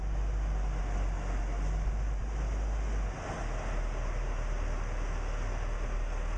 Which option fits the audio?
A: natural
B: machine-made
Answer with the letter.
A